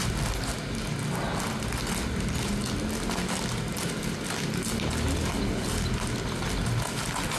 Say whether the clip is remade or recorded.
recorded